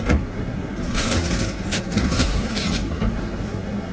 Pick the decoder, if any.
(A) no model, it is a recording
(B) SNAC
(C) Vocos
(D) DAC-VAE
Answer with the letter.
B